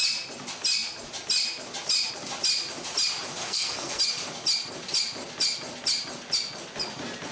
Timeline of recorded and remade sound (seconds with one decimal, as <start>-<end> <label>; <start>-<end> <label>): 0.0-3.4 recorded; 3.4-4.0 remade; 4.0-7.3 recorded